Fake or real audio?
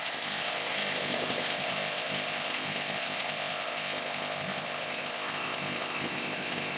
fake